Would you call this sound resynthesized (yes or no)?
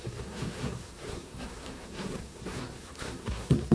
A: yes